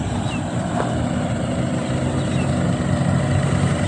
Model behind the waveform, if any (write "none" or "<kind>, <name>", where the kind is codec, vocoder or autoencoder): none